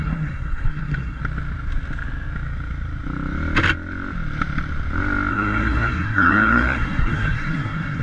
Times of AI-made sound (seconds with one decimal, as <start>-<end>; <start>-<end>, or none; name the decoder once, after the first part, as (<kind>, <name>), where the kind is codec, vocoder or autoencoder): 0.0-1.2 (codec, SNAC); 5.3-8.0